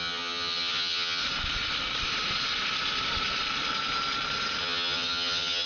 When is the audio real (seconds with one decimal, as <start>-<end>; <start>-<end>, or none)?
1.2-4.6